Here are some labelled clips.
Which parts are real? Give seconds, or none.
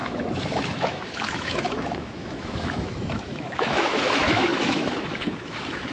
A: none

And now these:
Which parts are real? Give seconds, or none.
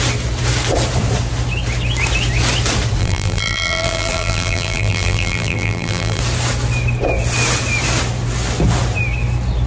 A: 0.0-3.0; 6.2-9.7